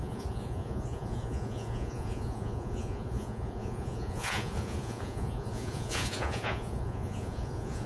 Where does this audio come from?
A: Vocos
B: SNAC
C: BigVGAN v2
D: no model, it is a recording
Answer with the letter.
A